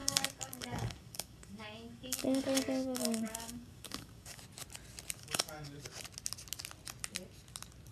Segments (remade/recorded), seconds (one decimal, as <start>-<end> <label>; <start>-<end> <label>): 0.0-4.4 remade; 4.4-5.2 recorded; 5.2-5.8 remade; 5.8-7.9 recorded